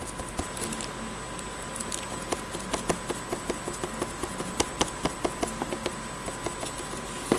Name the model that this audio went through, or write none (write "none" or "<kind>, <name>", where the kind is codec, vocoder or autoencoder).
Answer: none